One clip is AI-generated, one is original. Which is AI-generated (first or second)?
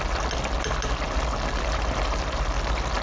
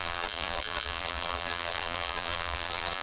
second